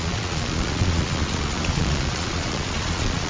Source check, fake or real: fake